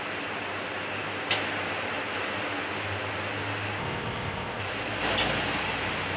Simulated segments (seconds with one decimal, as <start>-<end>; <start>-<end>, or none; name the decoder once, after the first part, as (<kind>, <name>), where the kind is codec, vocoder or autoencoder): 3.8-4.6 (codec, ZipCodec)